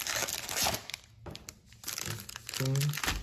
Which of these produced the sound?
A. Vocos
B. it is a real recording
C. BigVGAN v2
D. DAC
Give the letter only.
B